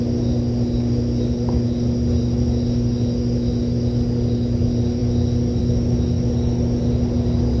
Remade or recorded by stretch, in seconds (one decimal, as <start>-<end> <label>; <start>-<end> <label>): 0.0-7.6 recorded